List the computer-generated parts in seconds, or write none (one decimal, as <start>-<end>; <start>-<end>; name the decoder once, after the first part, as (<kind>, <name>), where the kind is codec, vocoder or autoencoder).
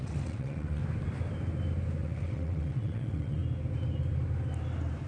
0.0-0.8 (vocoder, WaveNeXt); 2.0-3.4